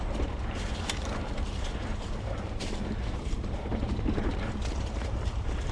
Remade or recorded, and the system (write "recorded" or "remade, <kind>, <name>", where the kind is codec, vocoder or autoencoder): remade, vocoder, BigVGAN v2